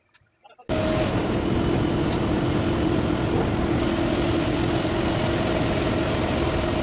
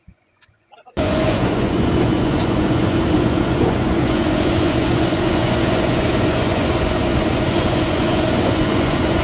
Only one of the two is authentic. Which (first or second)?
first